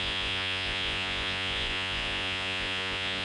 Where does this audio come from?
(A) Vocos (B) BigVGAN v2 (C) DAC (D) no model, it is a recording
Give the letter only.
A